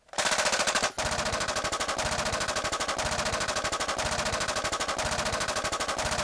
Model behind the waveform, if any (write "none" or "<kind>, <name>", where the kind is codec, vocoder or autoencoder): none